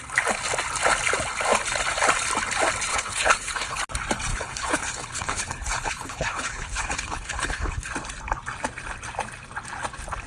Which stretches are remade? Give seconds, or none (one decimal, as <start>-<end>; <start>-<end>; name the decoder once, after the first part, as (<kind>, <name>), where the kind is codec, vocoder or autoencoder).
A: 2.9-3.8 (codec, HILCodec); 4.3-7.9